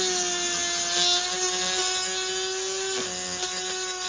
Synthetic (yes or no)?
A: no